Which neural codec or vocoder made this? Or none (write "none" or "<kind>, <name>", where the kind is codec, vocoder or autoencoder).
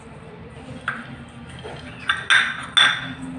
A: none